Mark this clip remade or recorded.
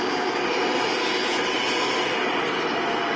recorded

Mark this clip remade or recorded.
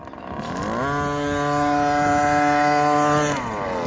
recorded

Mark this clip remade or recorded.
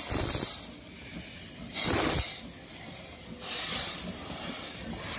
recorded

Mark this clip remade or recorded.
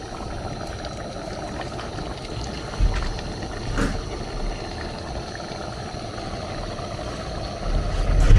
recorded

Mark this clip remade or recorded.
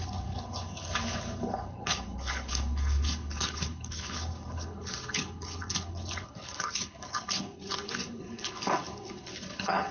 remade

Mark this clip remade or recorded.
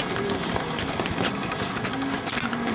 recorded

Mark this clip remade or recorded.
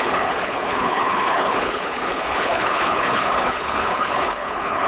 remade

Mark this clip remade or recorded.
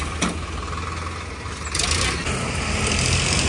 recorded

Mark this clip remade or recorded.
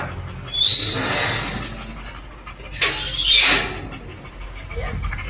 recorded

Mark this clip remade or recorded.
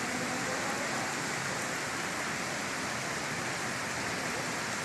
recorded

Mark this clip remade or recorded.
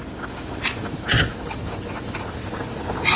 recorded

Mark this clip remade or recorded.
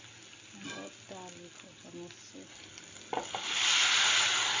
recorded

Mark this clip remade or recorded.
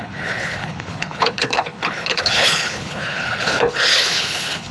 remade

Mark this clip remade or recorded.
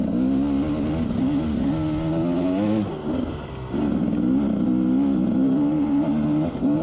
recorded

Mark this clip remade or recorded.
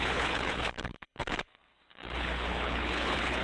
remade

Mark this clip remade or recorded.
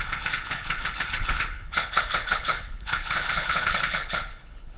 remade